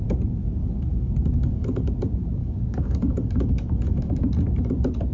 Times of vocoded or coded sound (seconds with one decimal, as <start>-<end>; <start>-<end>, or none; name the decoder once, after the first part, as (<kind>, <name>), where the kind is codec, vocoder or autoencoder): 0.6-1.9 (codec, DAC); 2.4-4.2

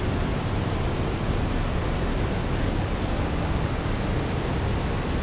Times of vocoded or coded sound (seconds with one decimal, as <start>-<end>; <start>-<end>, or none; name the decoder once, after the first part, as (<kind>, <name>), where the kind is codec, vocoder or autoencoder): 2.4-3.8 (codec, DAC)

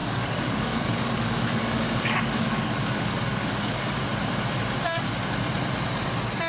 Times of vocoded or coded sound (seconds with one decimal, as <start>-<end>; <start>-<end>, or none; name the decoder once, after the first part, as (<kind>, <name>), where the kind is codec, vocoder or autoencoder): 0.0-3.9 (codec, DAC)